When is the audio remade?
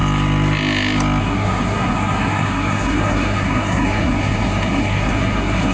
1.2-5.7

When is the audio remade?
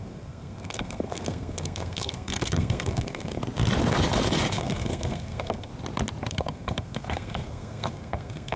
0.0-3.4; 4.5-5.7; 6.3-8.6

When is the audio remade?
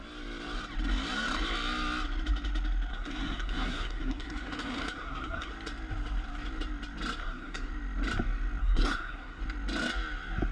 2.9-5.5; 7.2-7.7; 8.6-9.4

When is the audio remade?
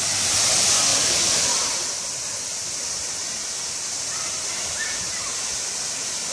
none